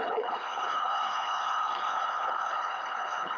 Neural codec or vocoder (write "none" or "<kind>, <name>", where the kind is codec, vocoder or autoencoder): codec, HILCodec